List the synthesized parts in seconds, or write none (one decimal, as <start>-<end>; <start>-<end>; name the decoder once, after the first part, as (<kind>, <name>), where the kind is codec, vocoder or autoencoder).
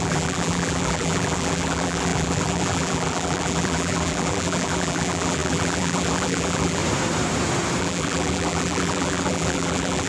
0.0-6.8 (vocoder, BigVGAN v2); 7.8-10.1